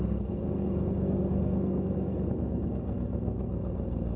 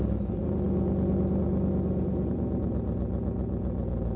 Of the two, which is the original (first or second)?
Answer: second